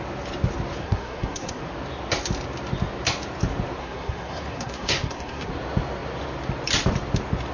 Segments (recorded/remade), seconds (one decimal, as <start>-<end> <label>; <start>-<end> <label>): 0.0-0.8 recorded; 0.8-1.6 remade; 1.6-3.8 recorded; 3.8-5.5 remade; 5.5-7.5 recorded